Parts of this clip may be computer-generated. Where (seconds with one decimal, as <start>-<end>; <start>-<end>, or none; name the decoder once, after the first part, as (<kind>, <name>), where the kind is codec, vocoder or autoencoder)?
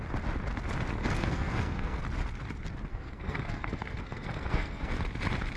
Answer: 1.0-2.0 (codec, SNAC); 2.9-4.9